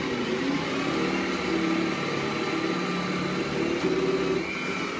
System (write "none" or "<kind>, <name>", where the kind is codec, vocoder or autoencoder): none